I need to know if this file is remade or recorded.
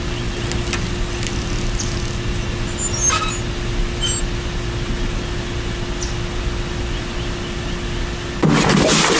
recorded